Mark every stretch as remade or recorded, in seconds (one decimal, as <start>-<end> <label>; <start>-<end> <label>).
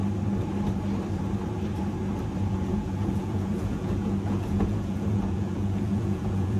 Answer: 0.0-2.4 recorded; 2.4-6.6 remade